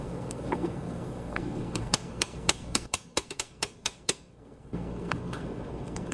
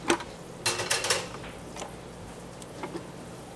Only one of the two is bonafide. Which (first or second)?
second